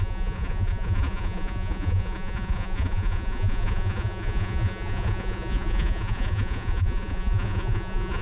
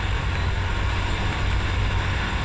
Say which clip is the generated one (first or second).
first